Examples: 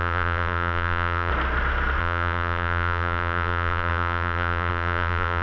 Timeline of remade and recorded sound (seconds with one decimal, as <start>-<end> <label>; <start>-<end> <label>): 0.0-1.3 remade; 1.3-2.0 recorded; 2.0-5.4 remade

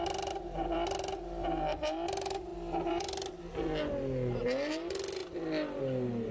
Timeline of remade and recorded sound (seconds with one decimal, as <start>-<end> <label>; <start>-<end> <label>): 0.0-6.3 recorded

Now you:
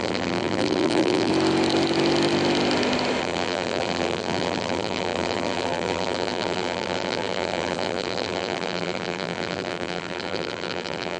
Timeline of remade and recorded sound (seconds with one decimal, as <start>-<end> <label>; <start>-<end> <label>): 0.0-1.3 remade; 1.3-3.2 recorded; 3.2-11.2 remade